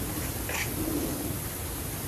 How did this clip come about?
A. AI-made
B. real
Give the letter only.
B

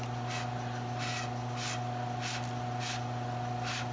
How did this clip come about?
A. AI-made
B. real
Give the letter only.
B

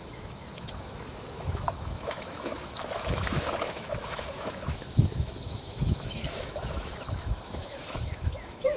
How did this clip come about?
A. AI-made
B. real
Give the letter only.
A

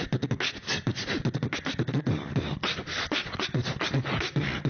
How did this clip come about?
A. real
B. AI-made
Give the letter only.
A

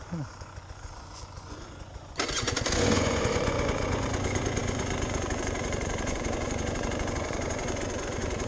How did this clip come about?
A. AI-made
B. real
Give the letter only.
A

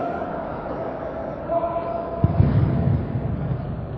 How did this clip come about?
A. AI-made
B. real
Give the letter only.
A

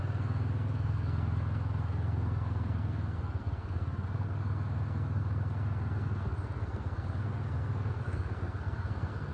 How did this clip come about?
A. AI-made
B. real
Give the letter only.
A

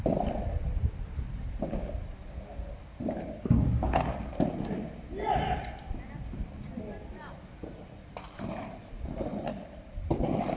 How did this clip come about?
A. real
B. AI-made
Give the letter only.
A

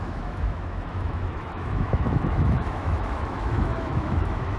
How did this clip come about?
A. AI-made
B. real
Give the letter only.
A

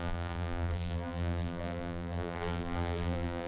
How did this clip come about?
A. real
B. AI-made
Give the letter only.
B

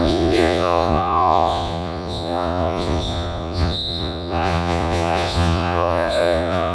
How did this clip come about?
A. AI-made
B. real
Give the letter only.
A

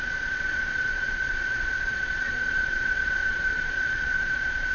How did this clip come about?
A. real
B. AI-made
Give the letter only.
B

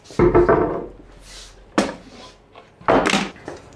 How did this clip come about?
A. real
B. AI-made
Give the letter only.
A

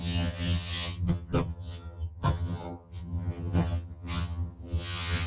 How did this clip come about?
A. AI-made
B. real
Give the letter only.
A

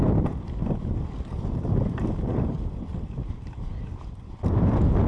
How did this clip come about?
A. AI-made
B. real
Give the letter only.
B